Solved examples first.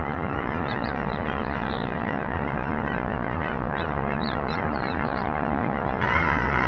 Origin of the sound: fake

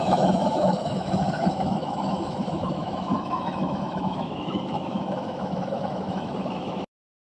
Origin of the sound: fake